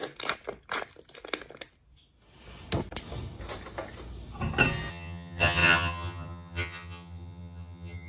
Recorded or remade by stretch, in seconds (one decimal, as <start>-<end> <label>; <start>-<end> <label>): 0.0-4.9 recorded; 4.9-8.1 remade